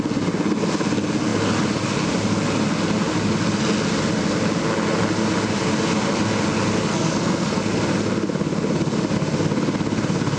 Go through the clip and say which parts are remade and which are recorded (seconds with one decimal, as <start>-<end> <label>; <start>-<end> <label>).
0.0-6.9 recorded; 6.9-7.6 remade; 7.6-10.4 recorded